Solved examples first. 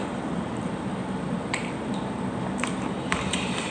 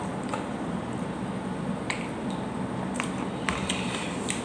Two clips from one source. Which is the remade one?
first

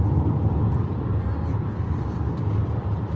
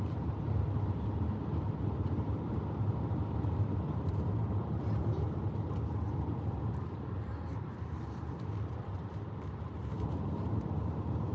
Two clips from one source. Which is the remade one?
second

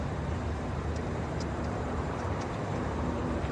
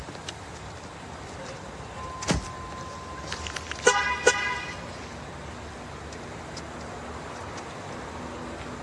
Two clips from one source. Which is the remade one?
first